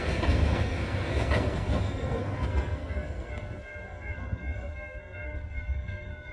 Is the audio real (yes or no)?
no